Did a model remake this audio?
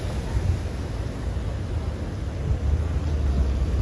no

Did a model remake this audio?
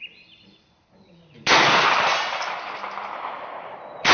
yes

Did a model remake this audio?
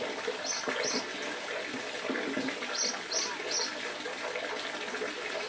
no